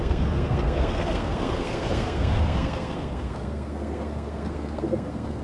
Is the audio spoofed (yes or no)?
yes